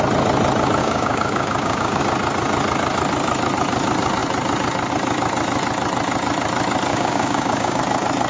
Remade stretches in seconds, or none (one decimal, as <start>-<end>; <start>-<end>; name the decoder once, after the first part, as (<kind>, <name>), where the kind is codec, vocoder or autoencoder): 0.8-2.0 (codec, DAC); 6.9-7.8

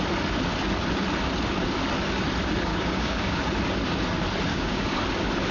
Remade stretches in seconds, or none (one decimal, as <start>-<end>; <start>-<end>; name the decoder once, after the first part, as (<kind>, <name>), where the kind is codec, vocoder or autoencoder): 2.7-3.4 (codec, DAC); 4.5-5.0

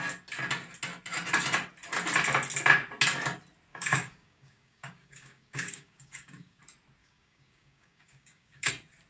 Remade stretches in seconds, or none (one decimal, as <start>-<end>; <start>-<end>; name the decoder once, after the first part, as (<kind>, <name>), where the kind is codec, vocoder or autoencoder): 3.7-6.6 (codec, DAC); 7.0-8.7